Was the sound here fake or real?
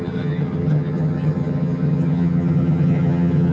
fake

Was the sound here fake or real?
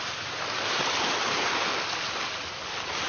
real